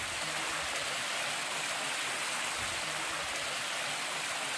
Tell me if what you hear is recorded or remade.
recorded